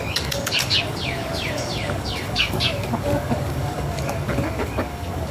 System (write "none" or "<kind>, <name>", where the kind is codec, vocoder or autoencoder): codec, DAC